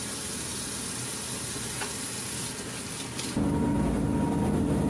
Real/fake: real